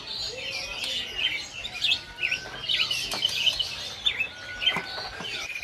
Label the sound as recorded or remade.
recorded